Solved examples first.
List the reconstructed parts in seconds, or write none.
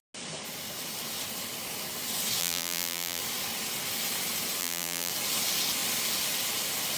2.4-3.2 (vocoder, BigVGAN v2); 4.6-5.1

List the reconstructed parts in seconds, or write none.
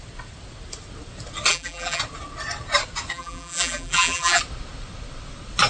1.5-2.0 (vocoder, BigVGAN v2); 3.1-4.4